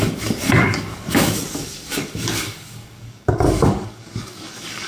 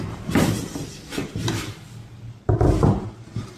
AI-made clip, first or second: first